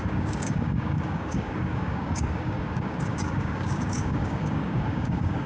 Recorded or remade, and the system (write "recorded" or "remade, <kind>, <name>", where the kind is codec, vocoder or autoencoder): remade, codec, DAC